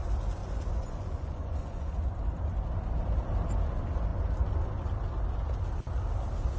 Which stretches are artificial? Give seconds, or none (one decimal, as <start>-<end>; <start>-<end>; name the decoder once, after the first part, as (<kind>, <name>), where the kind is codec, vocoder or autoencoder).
0.4-1.9 (vocoder, Vocos)